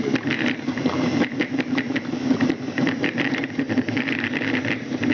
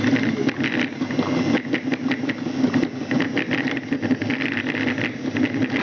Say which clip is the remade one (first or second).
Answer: first